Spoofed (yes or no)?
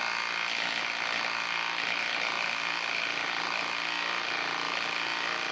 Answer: no